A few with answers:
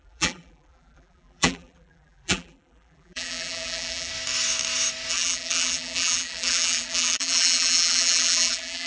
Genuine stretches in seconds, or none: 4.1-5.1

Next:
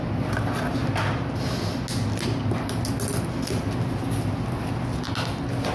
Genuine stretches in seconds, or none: 0.0-5.7

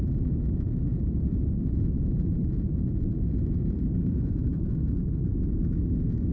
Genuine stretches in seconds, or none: 0.0-0.9; 4.7-6.3